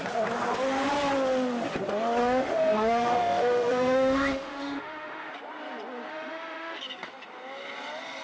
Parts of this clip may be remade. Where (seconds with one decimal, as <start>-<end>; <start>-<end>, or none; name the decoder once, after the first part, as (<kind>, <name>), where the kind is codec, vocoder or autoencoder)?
2.2-5.3 (autoencoder, DAC-VAE); 6.1-6.8

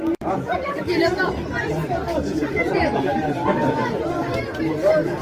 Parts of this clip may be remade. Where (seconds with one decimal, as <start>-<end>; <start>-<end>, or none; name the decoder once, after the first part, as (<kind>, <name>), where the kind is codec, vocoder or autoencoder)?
0.0-5.2 (vocoder, BigVGAN v2)